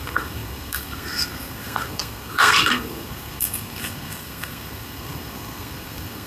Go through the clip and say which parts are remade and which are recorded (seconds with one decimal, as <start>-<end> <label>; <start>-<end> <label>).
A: 0.0-6.3 remade